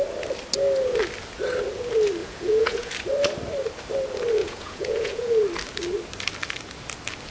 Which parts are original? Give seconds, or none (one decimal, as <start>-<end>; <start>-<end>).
0.0-2.2; 2.9-4.4; 5.4-7.3

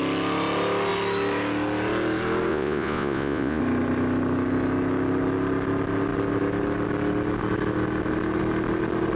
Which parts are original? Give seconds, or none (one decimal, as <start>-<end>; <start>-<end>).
0.0-2.5; 3.6-9.2

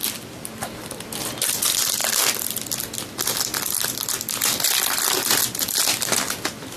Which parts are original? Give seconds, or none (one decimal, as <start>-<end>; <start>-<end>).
0.0-6.8

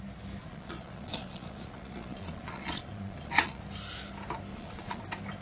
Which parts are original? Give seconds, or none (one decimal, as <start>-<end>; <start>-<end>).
0.0-0.4; 3.6-4.5; 5.0-5.4

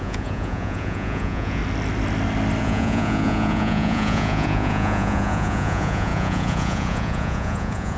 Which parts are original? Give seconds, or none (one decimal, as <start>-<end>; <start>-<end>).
1.6-2.6

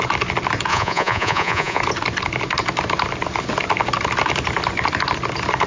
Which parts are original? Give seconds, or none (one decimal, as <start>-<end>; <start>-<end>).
0.0-0.7; 1.8-5.7

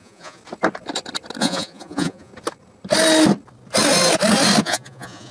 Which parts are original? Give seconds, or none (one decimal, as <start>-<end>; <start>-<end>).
0.4-1.4; 2.3-4.6